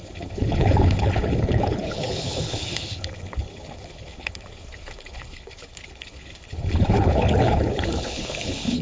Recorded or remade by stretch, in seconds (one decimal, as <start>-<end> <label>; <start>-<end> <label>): 0.0-8.8 remade